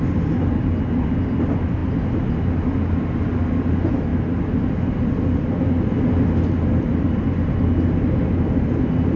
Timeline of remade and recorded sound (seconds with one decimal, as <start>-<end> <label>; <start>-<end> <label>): 0.0-9.2 recorded